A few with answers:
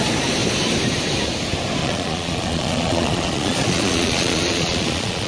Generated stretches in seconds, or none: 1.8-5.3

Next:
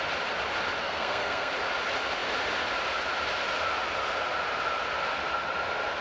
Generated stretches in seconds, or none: 0.8-1.5

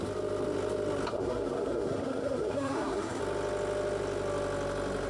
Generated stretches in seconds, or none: 1.1-3.2

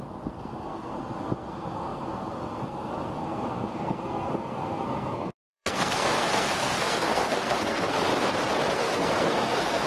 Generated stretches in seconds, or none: 0.0-8.1; 8.7-9.9